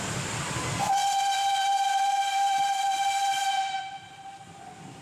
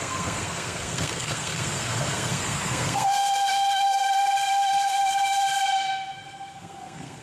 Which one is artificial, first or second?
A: second